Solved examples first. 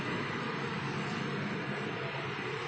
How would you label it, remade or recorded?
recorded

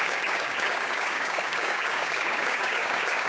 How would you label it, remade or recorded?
remade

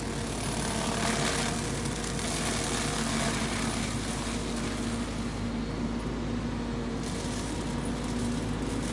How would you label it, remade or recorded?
recorded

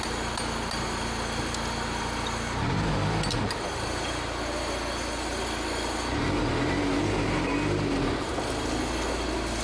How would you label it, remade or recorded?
recorded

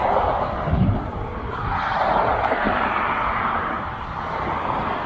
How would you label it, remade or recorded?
recorded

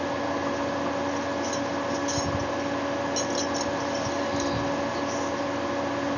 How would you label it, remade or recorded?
recorded